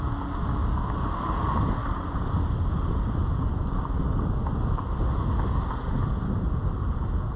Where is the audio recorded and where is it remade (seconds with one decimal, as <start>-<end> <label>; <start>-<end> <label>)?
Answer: 0.0-7.4 recorded